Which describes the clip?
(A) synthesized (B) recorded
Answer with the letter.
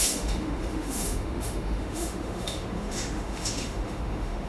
A